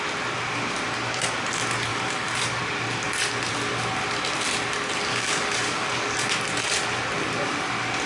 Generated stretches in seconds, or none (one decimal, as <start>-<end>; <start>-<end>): 1.9-2.6; 5.1-6.3